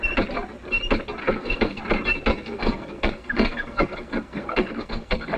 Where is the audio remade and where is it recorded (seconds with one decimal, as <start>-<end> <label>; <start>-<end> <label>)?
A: 0.0-1.2 recorded; 1.2-1.8 remade; 1.8-2.3 recorded; 2.3-5.4 remade